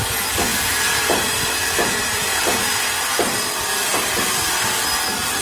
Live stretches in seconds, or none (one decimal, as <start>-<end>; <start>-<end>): 0.0-1.6; 2.4-5.4